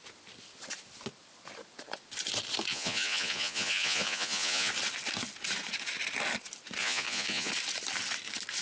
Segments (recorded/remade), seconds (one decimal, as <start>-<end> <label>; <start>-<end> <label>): 0.0-2.7 recorded; 2.7-4.7 remade; 4.7-6.8 recorded; 6.8-7.5 remade; 7.5-8.6 recorded